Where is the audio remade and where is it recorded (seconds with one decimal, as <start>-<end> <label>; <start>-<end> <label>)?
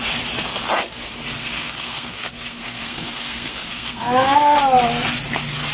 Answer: 0.0-1.4 recorded; 1.4-4.6 remade; 4.6-5.7 recorded